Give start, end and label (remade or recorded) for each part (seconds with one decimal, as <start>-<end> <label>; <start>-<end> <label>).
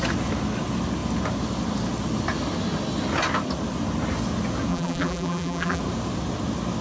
0.0-4.7 recorded; 4.7-5.8 remade; 5.8-6.8 recorded